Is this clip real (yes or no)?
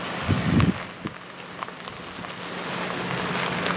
yes